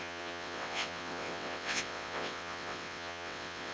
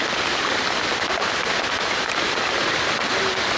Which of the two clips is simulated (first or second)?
first